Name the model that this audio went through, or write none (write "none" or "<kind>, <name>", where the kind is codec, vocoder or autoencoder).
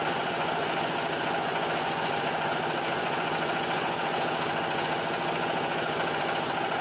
vocoder, Vocos